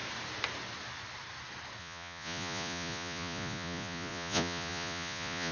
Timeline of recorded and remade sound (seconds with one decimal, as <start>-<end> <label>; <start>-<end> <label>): 0.0-1.8 recorded; 1.8-5.5 remade